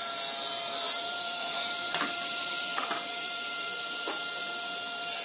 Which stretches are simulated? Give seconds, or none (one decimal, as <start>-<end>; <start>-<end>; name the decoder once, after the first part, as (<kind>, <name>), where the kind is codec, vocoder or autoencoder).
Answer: 1.0-4.1 (vocoder, BigVGAN v2)